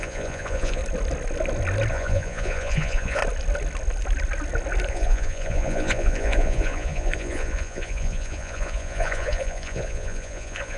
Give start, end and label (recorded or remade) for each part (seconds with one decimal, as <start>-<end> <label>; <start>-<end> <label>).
0.0-0.8 remade; 0.8-1.9 recorded; 1.9-3.2 remade; 3.2-4.9 recorded; 4.9-10.8 remade